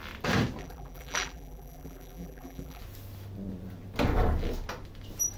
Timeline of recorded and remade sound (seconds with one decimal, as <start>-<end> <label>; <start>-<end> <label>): 0.0-0.6 recorded; 0.6-2.8 remade; 2.8-5.4 recorded